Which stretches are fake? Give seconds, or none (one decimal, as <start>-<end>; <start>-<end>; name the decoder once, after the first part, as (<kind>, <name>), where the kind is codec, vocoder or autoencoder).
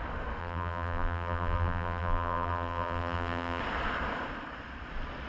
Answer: 0.4-3.6 (vocoder, BigVGAN v2)